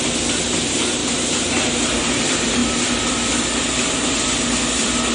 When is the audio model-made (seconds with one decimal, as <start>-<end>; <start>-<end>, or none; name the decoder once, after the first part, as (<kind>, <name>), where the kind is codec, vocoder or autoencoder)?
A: 0.0-1.0 (vocoder, BigVGAN v2); 2.0-5.1

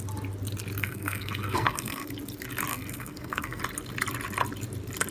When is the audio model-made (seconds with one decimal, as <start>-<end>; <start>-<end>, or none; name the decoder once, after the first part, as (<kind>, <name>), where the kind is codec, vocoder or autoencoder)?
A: 0.8-2.1 (codec, SNAC); 2.7-3.6

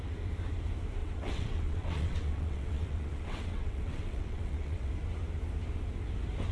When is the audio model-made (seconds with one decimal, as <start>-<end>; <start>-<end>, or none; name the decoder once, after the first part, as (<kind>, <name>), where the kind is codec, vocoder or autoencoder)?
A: 1.0-4.9 (vocoder, WaveNeXt)

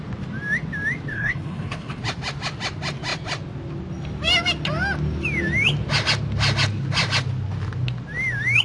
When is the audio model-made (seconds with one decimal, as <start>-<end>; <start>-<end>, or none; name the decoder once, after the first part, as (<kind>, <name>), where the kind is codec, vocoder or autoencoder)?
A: 1.1-2.0 (codec, HILCodec)

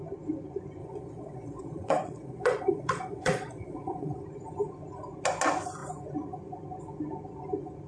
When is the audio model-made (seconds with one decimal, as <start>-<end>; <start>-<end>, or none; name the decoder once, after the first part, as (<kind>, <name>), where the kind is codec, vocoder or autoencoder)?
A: 0.8-4.2 (vocoder, Vocos)

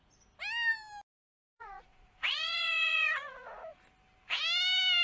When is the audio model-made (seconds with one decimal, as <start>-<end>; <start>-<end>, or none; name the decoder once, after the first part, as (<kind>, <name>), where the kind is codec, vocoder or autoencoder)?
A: 1.5-3.8 (vocoder, Vocos)

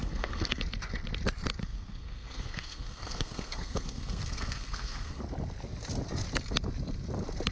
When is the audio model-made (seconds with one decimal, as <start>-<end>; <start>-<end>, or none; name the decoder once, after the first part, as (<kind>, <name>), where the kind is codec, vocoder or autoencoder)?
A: 0.0-0.6 (codec, SNAC); 1.6-5.2